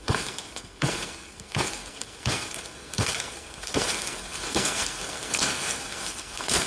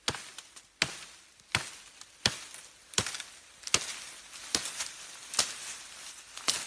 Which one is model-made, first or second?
first